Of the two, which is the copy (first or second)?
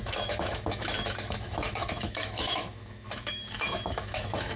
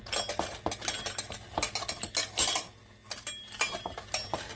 first